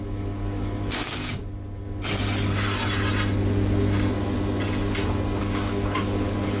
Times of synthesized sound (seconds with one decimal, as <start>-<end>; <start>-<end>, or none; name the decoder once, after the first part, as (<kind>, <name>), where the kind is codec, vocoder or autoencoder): 0.0-1.4 (codec, DAC); 5.4-6.6